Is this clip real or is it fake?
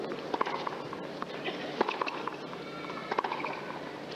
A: real